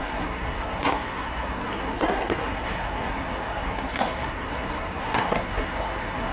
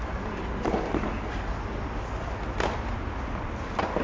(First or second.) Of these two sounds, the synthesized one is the first